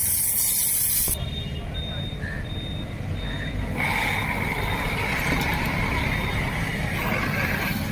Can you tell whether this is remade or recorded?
recorded